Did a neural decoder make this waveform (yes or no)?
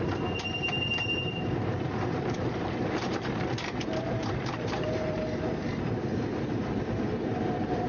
yes